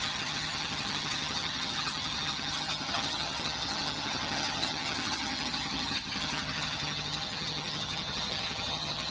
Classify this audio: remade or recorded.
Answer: remade